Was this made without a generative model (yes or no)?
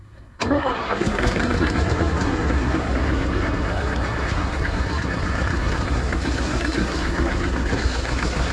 no